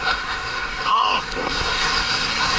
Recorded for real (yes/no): no